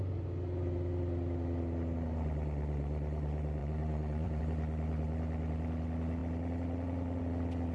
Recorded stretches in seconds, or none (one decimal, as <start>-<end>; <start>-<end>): 0.0-3.6; 4.4-7.7